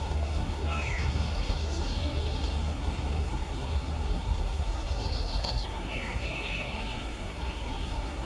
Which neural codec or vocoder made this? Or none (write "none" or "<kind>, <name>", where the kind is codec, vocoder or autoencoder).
codec, SNAC